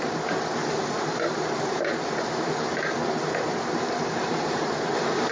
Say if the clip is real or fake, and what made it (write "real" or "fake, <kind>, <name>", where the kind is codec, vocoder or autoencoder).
fake, vocoder, BigVGAN v2